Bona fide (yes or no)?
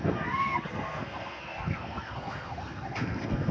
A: no